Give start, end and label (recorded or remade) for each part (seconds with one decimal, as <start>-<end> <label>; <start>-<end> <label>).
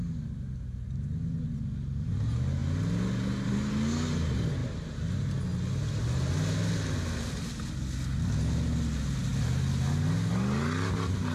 0.0-11.3 recorded